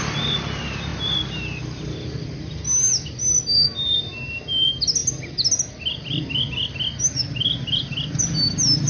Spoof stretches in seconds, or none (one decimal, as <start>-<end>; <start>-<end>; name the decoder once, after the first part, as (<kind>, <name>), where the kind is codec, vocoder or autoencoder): none